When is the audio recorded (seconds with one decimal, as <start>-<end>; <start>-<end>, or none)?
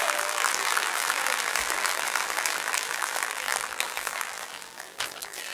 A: none